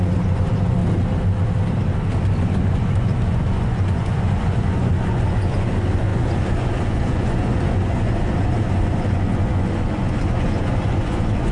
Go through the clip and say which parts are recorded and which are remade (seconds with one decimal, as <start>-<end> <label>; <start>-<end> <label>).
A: 0.0-0.8 remade; 0.8-2.4 recorded; 2.4-11.5 remade